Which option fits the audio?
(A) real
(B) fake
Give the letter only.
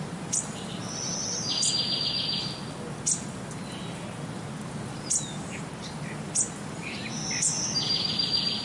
A